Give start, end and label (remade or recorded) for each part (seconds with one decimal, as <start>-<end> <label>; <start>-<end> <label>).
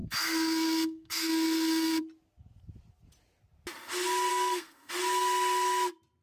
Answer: 0.0-2.0 remade; 2.0-4.3 recorded; 4.3-4.9 remade; 4.9-6.2 recorded